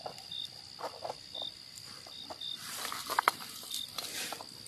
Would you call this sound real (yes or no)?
yes